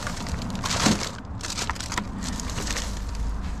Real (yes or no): yes